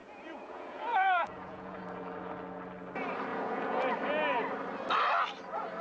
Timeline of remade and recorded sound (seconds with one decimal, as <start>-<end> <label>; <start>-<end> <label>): 0.0-1.8 remade; 1.8-3.3 recorded; 3.3-3.8 remade; 3.8-5.8 recorded